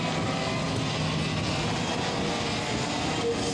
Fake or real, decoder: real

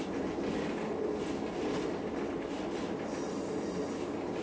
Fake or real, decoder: real